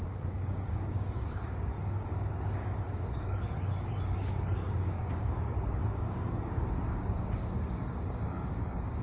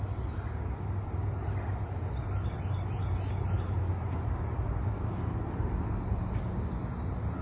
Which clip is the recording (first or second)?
second